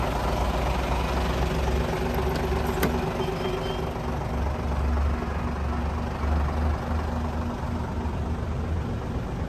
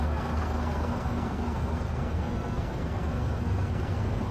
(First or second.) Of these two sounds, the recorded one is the first